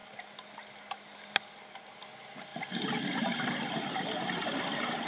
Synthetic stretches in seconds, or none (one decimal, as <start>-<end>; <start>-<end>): none

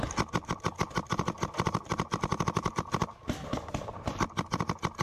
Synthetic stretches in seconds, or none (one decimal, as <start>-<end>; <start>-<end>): 0.4-2.4; 3.2-4.2

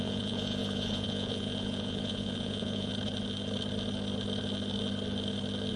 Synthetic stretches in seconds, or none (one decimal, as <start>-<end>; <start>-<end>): 0.0-2.9

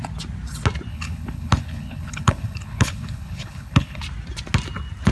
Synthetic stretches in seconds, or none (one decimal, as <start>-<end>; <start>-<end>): 0.9-4.0

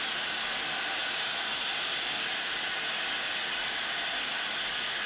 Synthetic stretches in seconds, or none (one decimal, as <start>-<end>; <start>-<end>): none

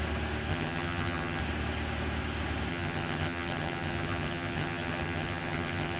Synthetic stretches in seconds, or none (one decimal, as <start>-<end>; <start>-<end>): 0.5-1.4; 2.7-6.0

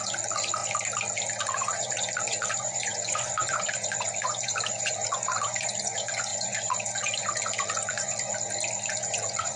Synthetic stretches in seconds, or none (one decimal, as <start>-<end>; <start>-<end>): 0.0-0.6; 1.4-8.3; 8.9-9.6

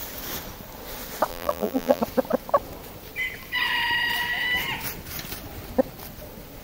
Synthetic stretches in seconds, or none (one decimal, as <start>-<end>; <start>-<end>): 1.3-2.0